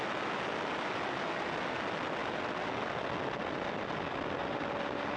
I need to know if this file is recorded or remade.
recorded